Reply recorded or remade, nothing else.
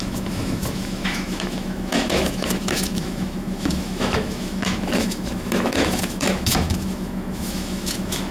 remade